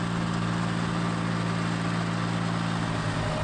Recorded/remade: recorded